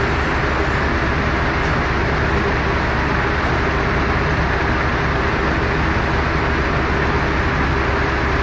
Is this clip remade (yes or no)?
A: no